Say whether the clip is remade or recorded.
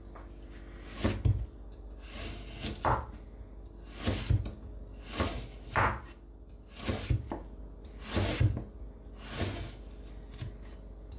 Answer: recorded